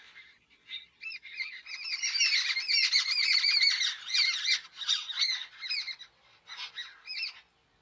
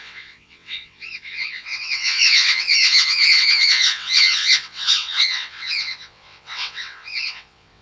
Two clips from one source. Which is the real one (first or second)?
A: first